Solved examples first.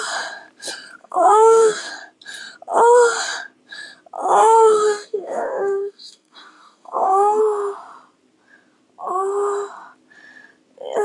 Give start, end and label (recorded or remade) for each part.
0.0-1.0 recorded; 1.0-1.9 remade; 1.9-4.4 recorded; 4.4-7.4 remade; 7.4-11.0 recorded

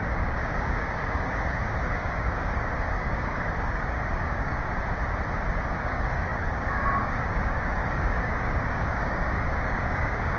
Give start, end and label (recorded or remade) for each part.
0.0-4.6 remade; 4.6-5.7 recorded; 5.7-10.4 remade

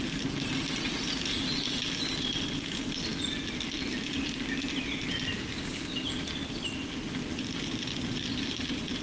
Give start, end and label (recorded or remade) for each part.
0.0-5.3 recorded; 5.3-5.9 remade; 5.9-9.0 recorded

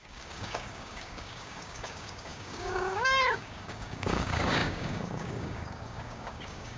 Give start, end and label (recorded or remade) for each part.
0.0-6.8 remade

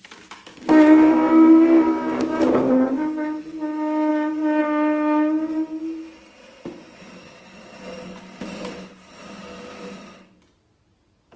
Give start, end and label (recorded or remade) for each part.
0.0-0.5 recorded; 0.5-3.4 remade; 3.4-11.4 recorded